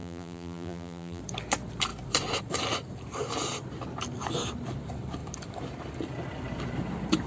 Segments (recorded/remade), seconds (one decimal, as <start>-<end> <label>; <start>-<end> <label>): 0.0-1.2 remade; 1.2-7.3 recorded